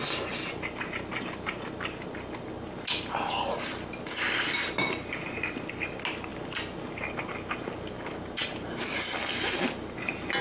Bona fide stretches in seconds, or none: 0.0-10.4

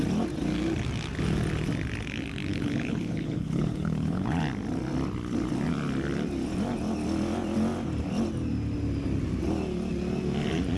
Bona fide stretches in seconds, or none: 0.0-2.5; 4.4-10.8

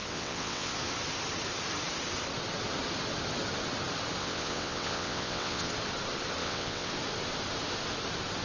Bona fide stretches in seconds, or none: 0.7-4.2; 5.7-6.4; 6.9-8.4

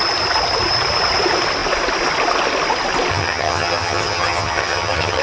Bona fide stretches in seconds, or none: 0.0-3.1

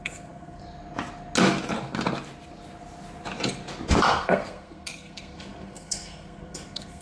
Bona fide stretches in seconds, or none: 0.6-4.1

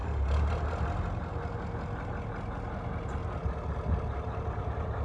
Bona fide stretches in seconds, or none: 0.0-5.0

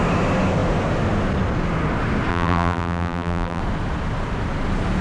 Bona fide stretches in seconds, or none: 0.0-2.3; 3.6-5.0